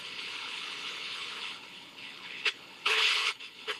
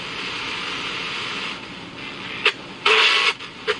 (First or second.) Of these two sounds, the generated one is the first